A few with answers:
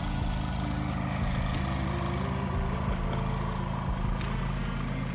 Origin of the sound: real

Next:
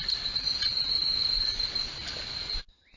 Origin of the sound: real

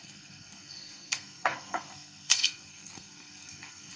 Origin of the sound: fake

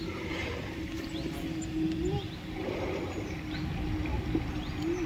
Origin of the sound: real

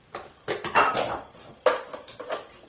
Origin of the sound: real